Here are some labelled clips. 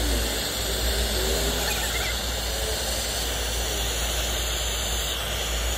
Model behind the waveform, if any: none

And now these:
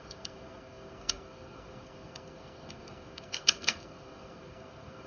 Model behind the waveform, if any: codec, SNAC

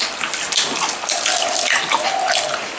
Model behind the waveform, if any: none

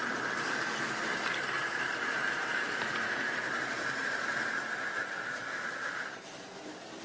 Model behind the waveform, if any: none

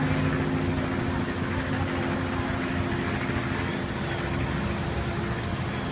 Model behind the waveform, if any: none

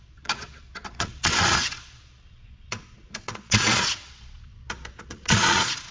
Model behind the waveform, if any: vocoder, Vocos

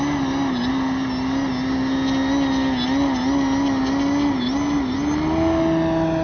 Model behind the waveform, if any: none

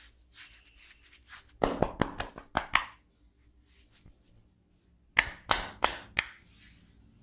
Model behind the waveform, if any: none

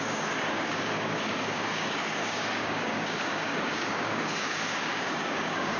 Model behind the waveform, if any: codec, DAC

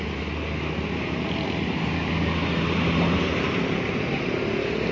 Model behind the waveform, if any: none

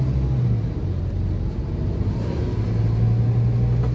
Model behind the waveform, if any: none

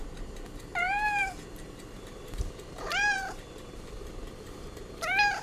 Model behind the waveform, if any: vocoder, BigVGAN v2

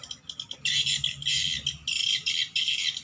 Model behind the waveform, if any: none